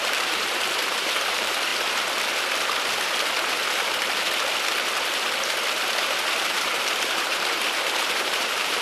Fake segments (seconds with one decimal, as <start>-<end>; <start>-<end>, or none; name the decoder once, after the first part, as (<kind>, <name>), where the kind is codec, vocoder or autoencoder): 0.0-1.7 (vocoder, BigVGAN v2); 6.4-8.8